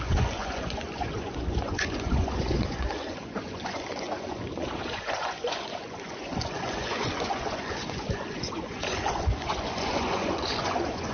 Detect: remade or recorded remade